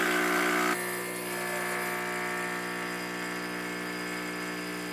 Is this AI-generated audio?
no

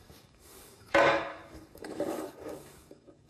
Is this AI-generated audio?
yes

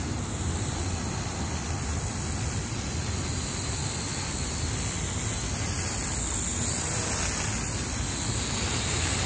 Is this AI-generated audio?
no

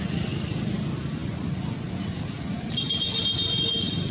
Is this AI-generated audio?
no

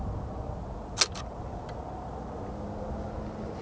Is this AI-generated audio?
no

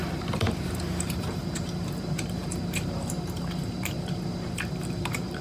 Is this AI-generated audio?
yes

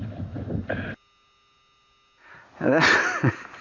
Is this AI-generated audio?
no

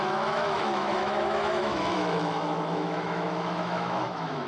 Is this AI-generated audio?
yes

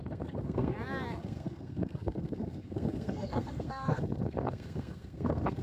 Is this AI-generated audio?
yes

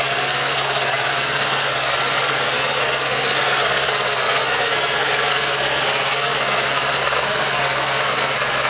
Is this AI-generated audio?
yes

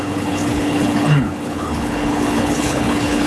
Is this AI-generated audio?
yes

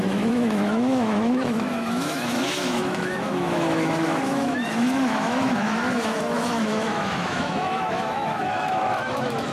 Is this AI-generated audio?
yes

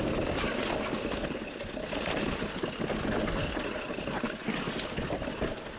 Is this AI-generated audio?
no